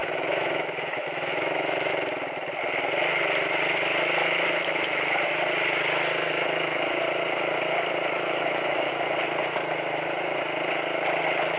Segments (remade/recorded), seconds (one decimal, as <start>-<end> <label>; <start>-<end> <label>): 0.0-1.9 remade; 1.9-4.2 recorded; 4.2-5.1 remade; 5.1-6.2 recorded; 6.2-7.0 remade; 7.0-8.1 recorded; 8.1-8.9 remade; 8.9-11.6 recorded